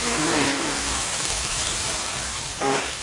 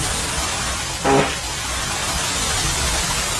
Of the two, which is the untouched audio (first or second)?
second